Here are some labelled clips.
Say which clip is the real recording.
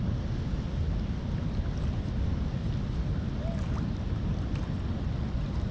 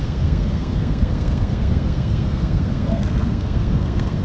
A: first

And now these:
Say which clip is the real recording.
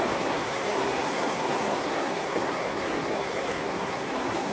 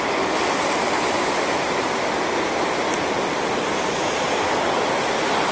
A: second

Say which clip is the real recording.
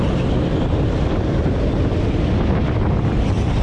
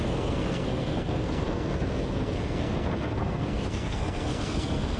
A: first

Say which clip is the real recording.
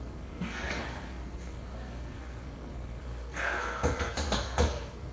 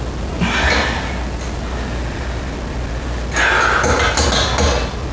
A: second